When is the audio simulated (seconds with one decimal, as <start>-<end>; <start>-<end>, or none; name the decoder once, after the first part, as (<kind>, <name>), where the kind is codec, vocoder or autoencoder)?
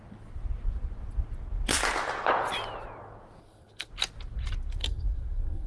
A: 3.4-3.9 (codec, SNAC); 4.8-5.7